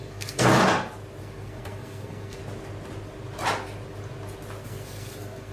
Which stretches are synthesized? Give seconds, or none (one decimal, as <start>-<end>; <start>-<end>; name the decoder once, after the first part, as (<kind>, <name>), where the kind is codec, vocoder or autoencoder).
0.0-0.5 (codec, SNAC); 1.2-2.4; 4.6-5.5